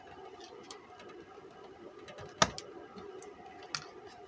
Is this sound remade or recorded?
recorded